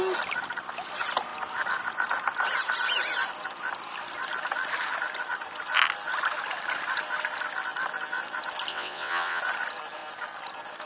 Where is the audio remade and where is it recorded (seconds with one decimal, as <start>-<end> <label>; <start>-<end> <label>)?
0.0-8.7 recorded; 8.7-9.4 remade; 9.4-10.9 recorded